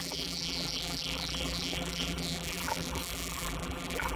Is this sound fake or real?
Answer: fake